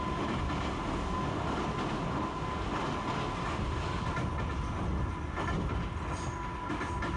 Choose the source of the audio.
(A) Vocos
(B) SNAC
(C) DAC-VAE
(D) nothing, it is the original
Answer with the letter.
D